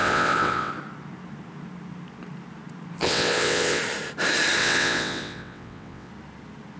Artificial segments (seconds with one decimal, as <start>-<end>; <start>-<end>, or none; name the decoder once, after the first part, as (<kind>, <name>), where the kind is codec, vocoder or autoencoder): 0.0-0.7 (vocoder, WaveNeXt); 3.0-3.8; 4.6-6.1